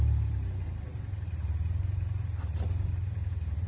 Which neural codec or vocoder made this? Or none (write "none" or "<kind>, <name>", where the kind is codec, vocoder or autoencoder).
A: vocoder, BigVGAN v2